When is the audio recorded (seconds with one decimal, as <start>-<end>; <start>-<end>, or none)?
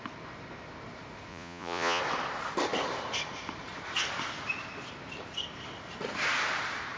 0.0-1.3; 2.0-7.0